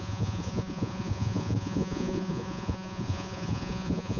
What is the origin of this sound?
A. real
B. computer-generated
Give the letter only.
B